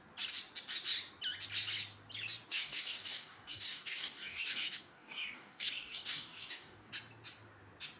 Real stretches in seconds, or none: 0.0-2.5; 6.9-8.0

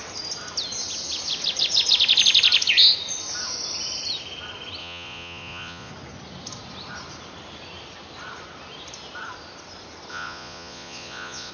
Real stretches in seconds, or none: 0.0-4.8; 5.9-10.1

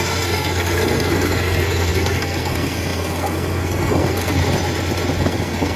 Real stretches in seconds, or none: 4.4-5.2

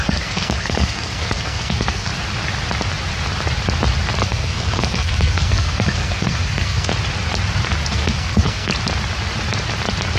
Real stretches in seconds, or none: 2.1-4.2; 6.9-7.9; 8.7-10.2

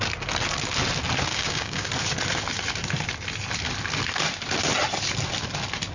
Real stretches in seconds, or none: 0.0-1.3; 1.9-5.9

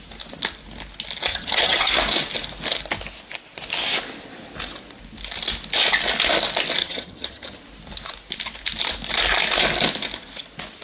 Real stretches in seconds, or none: 0.0-1.3; 1.9-6.8; 7.6-10.8